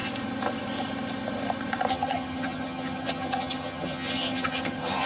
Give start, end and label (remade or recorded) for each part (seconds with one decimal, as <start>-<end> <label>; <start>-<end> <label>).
0.0-1.9 recorded; 1.9-5.1 remade